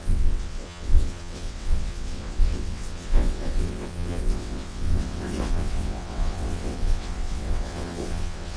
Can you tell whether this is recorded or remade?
remade